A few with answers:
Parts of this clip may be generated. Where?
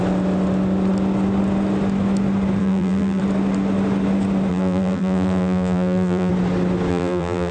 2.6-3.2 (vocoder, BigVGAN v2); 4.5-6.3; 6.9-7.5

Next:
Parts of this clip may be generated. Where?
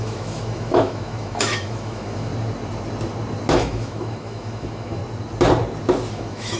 0.0-2.3 (autoencoder, DAC-VAE); 3.5-5.0; 6.1-6.6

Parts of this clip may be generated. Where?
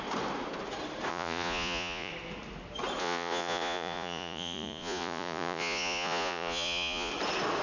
1.1-2.1 (vocoder, Vocos); 3.0-7.1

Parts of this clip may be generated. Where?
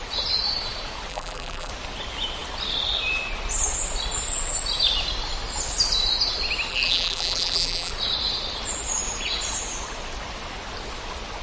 1.1-1.7 (vocoder, BigVGAN v2); 6.7-7.9